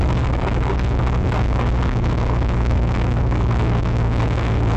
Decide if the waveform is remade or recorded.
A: remade